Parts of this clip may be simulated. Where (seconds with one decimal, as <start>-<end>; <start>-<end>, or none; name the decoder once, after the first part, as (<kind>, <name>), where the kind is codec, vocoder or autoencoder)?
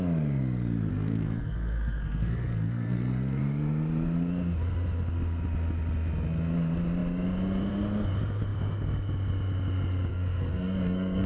0.9-3.4 (codec, SNAC); 10.1-11.3